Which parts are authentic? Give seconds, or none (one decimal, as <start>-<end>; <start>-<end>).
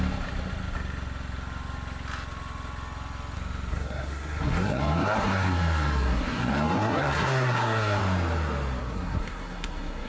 0.0-3.7; 8.0-8.8